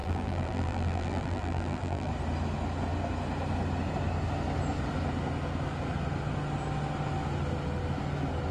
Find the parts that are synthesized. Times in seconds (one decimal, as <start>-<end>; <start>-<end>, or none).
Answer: 0.0-2.1

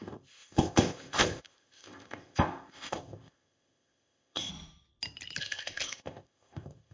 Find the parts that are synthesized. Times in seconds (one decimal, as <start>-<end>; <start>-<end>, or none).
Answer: 0.0-4.5; 5.4-6.9

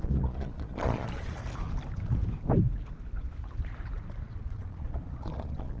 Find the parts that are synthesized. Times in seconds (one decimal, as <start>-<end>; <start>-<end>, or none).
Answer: 0.0-1.4; 4.2-5.8

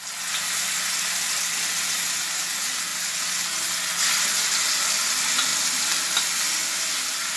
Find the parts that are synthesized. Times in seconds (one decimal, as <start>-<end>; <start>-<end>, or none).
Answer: none

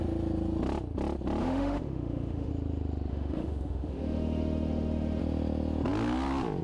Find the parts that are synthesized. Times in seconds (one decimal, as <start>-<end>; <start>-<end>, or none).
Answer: 1.4-2.5; 3.1-5.2

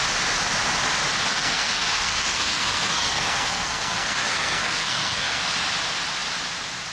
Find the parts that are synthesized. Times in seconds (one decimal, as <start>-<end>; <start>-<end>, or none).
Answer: 1.3-5.4